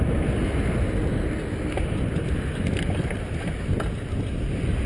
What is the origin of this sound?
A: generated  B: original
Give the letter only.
B